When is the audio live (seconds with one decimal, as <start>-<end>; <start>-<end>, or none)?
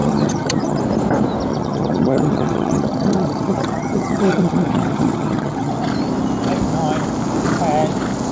0.8-1.5; 5.7-8.3